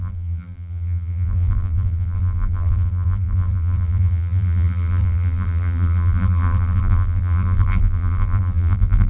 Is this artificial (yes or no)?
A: yes